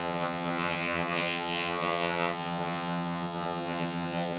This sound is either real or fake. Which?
fake